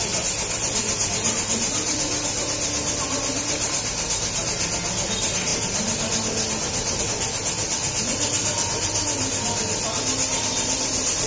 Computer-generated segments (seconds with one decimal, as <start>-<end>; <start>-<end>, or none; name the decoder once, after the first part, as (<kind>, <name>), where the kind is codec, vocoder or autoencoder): none